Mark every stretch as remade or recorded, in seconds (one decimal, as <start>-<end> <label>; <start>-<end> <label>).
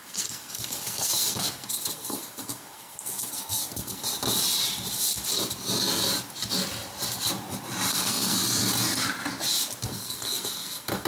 0.0-4.0 remade; 4.0-7.9 recorded; 7.9-8.4 remade; 8.4-9.8 recorded; 9.8-11.1 remade